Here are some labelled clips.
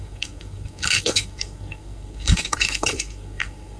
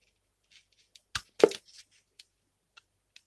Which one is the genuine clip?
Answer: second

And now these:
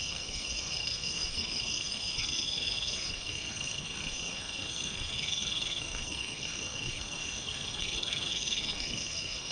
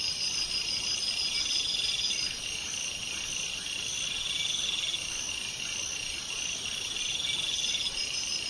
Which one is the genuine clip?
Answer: second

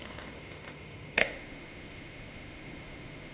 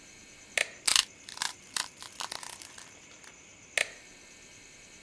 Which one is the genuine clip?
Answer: second